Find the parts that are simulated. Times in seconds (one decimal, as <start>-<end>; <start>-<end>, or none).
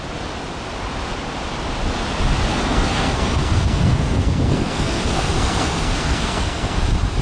2.5-6.8